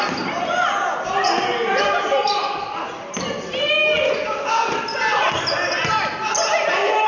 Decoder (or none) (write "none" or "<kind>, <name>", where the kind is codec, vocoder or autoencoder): none